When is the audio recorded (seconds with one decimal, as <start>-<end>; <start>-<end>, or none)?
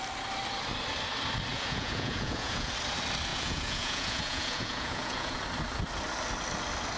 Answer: 0.0-1.5; 2.7-3.3; 5.4-7.0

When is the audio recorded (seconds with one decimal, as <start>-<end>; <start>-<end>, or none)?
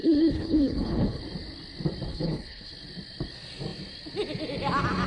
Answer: 1.2-2.1; 2.7-5.1